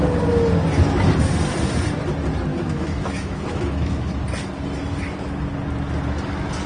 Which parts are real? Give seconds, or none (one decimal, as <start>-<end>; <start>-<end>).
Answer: 0.0-2.5; 4.1-6.7